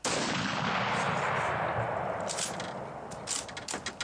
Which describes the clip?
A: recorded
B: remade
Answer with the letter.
A